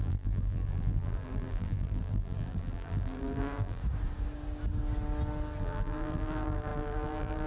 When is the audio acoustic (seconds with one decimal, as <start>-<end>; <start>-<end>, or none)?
3.8-5.6